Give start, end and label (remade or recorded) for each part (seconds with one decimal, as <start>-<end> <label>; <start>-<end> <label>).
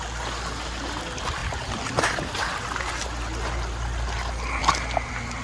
0.0-5.4 recorded